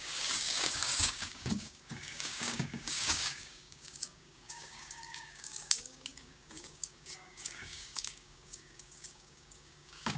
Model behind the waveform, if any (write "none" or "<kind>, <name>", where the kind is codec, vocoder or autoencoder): codec, DAC